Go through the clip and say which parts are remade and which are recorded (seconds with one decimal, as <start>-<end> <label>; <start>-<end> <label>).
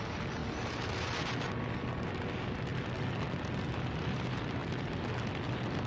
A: 0.0-5.9 recorded